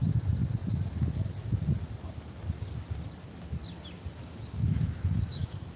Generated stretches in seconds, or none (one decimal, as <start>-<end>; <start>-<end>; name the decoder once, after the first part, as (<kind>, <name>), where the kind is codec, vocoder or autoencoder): 4.2-5.8 (autoencoder, DAC-VAE)